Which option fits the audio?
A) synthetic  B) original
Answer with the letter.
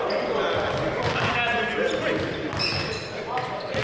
B